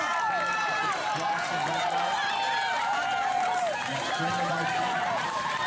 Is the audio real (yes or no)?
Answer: no